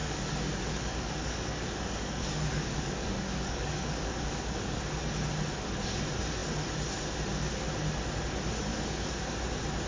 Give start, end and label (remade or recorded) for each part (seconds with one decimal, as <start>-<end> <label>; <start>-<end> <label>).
0.0-4.8 remade; 4.8-8.7 recorded; 8.7-9.4 remade; 9.4-9.9 recorded

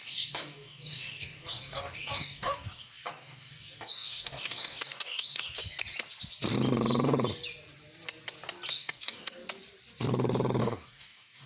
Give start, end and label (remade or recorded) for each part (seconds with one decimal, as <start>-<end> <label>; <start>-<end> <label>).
0.0-5.6 remade; 5.6-8.7 recorded; 8.7-9.4 remade; 9.4-10.6 recorded; 10.6-11.5 remade

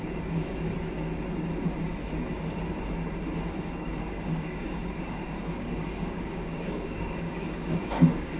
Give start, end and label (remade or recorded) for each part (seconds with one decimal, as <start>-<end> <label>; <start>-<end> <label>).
0.0-0.7 remade; 0.7-3.6 recorded; 3.6-8.4 remade

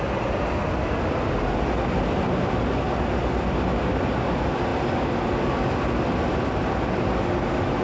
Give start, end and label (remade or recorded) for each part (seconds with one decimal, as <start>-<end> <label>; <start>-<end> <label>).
0.0-7.8 recorded

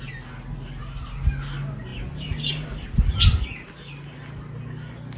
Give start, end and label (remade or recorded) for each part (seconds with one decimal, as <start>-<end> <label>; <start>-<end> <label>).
0.0-5.2 recorded